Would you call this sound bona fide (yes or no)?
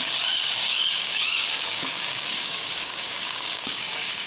no